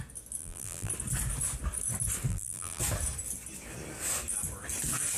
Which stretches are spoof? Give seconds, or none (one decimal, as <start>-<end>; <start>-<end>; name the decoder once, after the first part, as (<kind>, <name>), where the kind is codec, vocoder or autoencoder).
0.4-0.9 (vocoder, BigVGAN v2); 2.3-2.8